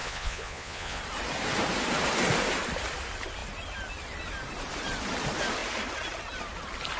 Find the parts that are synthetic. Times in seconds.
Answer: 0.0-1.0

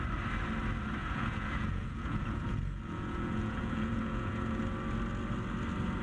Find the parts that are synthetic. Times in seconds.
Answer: 1.0-4.6

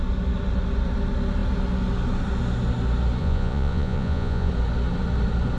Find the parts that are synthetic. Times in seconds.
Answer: 3.2-4.5